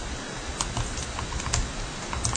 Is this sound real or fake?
real